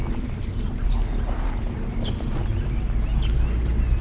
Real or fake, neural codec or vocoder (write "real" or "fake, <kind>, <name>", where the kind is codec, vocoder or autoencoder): real